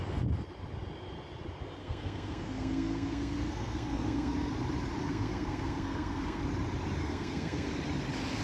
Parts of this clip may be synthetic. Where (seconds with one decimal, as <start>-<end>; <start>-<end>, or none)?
1.8-4.5; 5.0-6.4; 7.0-7.7